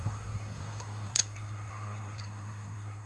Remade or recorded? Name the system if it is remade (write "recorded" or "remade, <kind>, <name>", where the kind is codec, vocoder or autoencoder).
remade, codec, SNAC